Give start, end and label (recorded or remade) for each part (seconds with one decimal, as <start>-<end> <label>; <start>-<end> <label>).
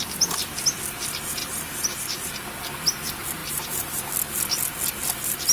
0.0-1.4 recorded; 1.4-2.3 remade; 2.3-3.4 recorded; 3.4-4.0 remade; 4.0-5.5 recorded